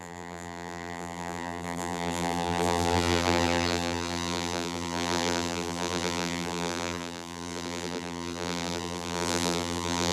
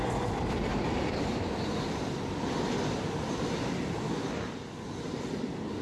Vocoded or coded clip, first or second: first